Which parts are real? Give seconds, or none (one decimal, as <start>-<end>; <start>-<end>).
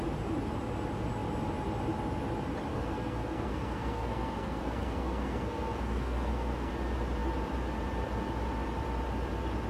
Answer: 0.0-2.7; 6.7-9.7